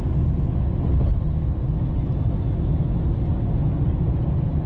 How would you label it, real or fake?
real